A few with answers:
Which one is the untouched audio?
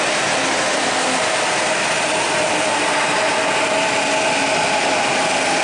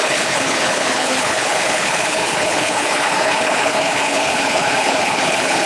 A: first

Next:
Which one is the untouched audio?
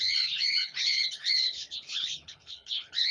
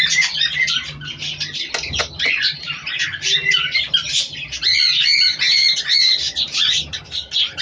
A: second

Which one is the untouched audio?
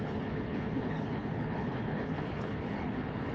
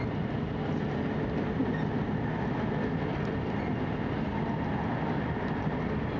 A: second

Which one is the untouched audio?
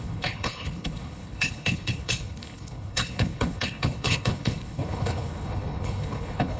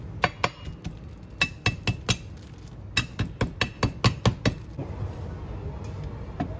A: second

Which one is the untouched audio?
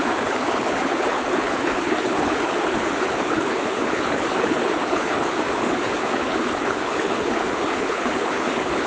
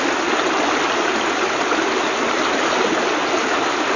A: second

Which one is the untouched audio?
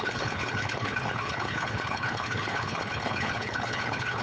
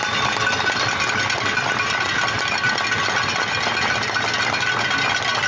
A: second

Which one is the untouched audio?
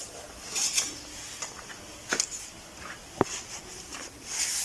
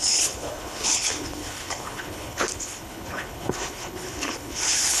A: first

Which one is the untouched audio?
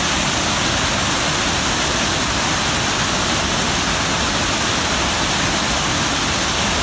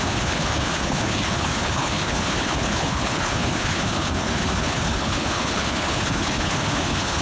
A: first